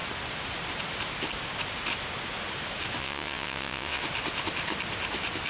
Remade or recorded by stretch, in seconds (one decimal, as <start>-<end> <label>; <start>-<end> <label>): 0.0-3.0 recorded; 3.0-4.0 remade; 4.0-5.5 recorded